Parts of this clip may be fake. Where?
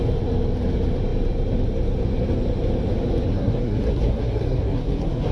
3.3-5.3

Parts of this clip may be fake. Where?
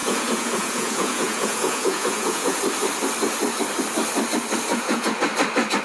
0.0-2.6; 4.7-5.2